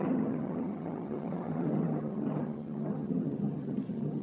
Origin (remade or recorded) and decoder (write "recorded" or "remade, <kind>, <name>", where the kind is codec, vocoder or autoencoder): remade, vocoder, HiFi-GAN